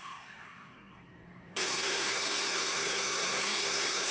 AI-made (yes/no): yes